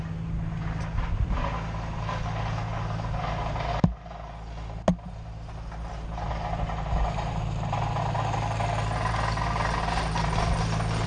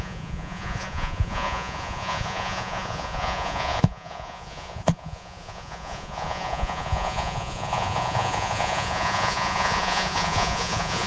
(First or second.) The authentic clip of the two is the first